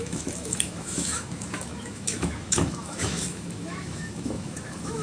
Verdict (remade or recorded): remade